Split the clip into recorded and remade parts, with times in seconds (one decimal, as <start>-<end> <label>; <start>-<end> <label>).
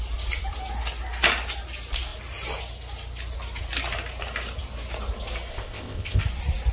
0.0-5.5 recorded; 5.5-6.2 remade; 6.2-6.7 recorded